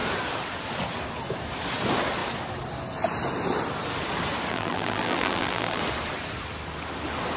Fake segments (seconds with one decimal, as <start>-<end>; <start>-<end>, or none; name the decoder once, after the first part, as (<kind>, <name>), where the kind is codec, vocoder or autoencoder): 4.5-5.8 (vocoder, BigVGAN v2)